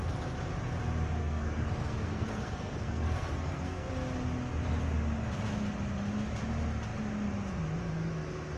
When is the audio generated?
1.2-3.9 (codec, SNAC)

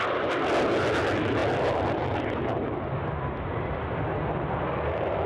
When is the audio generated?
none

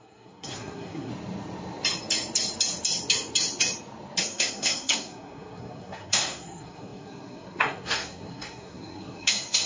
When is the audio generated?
0.0-1.1 (codec, SNAC); 4.2-9.7

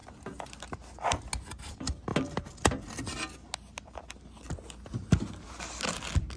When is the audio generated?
none

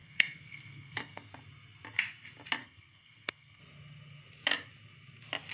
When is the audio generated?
0.0-1.3 (codec, SNAC); 2.6-3.6

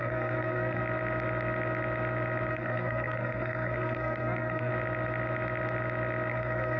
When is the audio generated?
0.0-0.8 (codec, SNAC); 2.5-4.7; 6.3-6.8

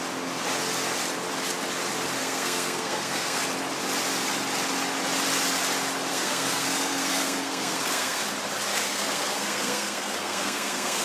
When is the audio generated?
2.2-3.4 (codec, SNAC); 6.1-8.2; 8.7-11.0

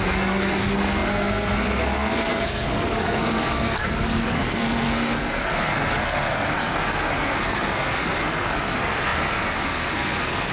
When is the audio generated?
0.0-10.5 (codec, SNAC)